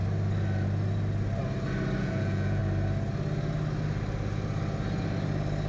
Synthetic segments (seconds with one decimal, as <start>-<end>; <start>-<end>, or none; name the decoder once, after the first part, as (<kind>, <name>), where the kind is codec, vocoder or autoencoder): 2.0-2.6 (vocoder, Vocos)